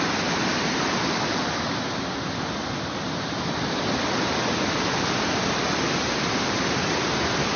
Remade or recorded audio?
recorded